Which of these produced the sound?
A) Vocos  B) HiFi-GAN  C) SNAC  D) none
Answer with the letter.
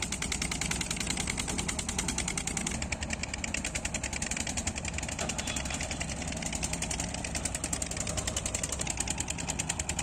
D